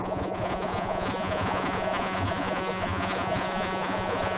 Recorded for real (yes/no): no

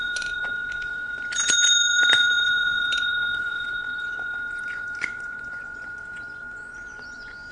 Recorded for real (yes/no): no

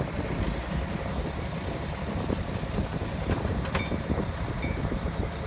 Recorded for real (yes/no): yes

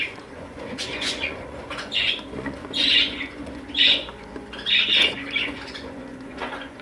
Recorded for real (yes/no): no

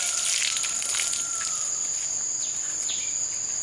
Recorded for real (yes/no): yes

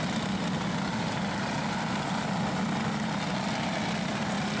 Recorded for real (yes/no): yes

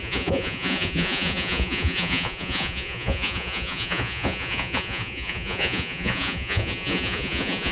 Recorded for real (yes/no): no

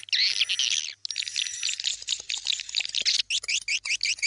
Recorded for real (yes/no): yes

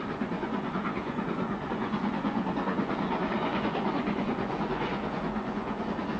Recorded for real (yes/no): no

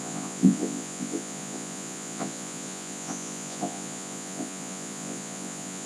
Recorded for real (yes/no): no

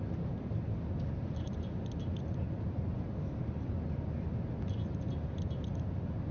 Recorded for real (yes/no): yes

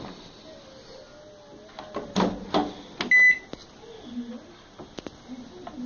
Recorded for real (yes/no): yes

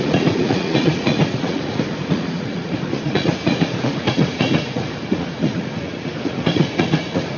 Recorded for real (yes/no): no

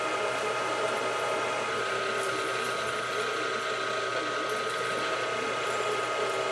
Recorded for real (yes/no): yes